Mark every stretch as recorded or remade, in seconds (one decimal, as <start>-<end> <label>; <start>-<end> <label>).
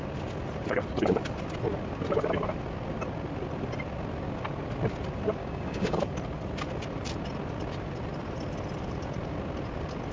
0.0-5.4 recorded; 5.4-6.0 remade; 6.0-10.1 recorded